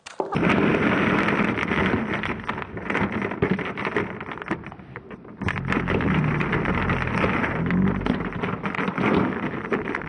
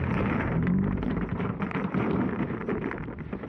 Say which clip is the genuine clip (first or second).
first